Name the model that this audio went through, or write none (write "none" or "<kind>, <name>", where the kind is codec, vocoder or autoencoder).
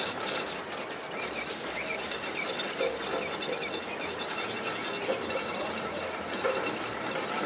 none